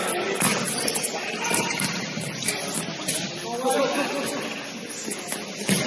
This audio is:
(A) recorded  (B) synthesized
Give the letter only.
A